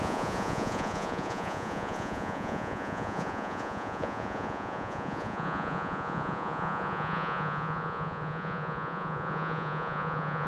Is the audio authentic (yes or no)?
no